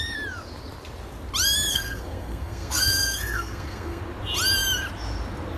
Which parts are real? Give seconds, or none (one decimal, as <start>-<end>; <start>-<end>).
0.0-1.7; 4.0-5.6